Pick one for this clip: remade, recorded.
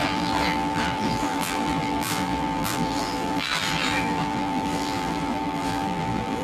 remade